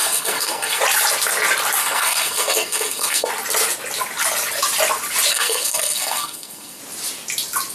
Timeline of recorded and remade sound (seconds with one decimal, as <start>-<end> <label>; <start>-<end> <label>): 0.0-0.8 remade; 0.8-1.8 recorded; 1.8-3.3 remade; 3.3-5.3 recorded; 5.3-6.8 remade; 6.8-7.7 recorded